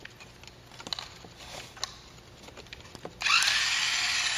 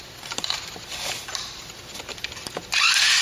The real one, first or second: first